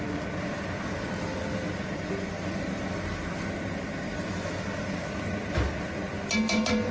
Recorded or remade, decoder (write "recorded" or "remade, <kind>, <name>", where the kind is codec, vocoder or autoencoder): recorded